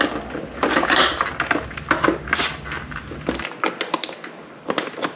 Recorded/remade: recorded